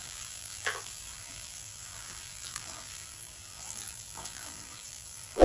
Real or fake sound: fake